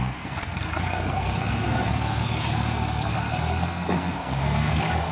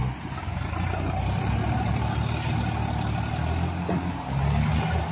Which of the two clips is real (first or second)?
second